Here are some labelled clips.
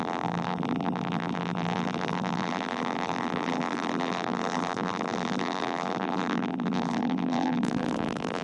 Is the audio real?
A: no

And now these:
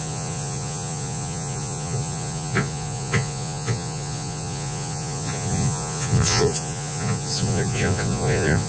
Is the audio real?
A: no